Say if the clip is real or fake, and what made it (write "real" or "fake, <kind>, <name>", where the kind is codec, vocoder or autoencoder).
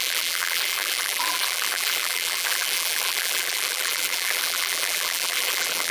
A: fake, vocoder, BigVGAN v2